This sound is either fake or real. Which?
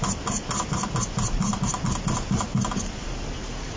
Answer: real